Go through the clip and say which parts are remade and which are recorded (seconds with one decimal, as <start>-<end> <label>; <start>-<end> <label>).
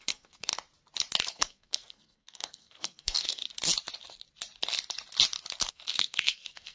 0.0-0.5 remade; 0.5-1.3 recorded; 1.3-3.4 remade; 3.4-5.7 recorded; 5.7-6.7 remade